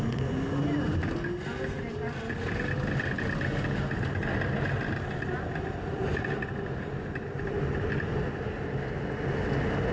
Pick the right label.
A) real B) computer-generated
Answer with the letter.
A